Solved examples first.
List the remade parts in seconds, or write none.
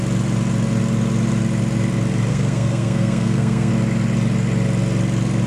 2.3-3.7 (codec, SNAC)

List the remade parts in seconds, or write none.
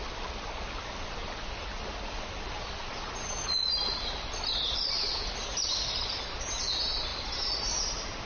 none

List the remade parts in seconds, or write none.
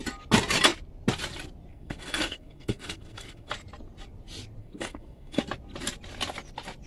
1.7-3.5 (codec, SNAC); 4.6-5.4